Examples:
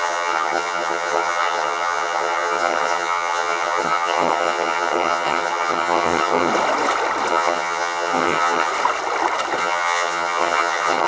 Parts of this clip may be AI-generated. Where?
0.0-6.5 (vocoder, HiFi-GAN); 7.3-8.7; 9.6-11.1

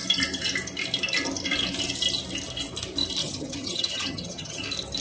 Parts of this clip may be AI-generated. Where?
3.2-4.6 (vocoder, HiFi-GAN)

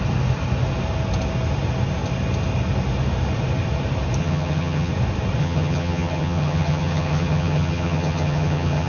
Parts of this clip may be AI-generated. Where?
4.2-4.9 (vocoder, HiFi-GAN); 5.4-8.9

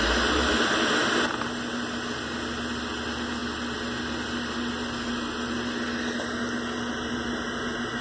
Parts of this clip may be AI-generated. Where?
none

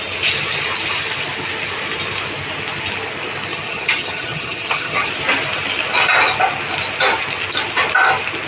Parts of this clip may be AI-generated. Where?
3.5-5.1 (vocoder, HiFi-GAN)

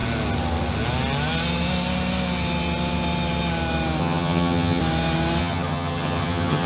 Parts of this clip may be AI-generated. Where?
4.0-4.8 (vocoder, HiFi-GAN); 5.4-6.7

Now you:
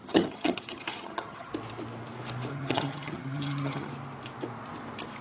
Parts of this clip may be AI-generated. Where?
0.0-1.5 (vocoder, HiFi-GAN); 2.5-3.9

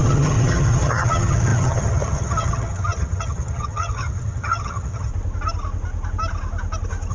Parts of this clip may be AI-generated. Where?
0.0-5.1 (vocoder, HiFi-GAN)